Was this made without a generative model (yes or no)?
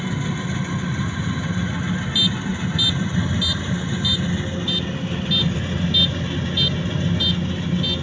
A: yes